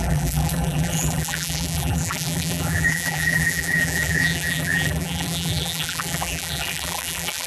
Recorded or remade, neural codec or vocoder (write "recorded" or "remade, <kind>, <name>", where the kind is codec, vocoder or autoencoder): remade, vocoder, BigVGAN v2